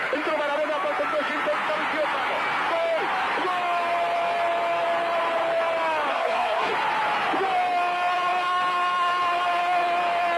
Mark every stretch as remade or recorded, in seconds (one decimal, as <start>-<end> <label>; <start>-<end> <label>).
0.0-6.1 recorded; 6.1-6.7 remade; 6.7-10.4 recorded